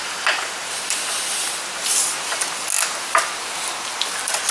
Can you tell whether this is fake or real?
real